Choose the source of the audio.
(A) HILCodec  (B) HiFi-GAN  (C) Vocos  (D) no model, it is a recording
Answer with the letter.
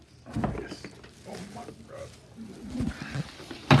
D